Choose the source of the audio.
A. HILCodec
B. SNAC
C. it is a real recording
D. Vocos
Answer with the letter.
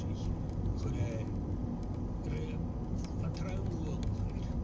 C